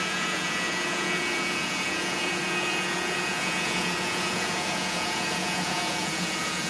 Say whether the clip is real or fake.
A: fake